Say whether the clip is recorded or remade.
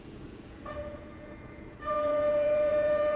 remade